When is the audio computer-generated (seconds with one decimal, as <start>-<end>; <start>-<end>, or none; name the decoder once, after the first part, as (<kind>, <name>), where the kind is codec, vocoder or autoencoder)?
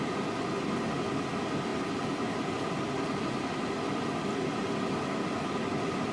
none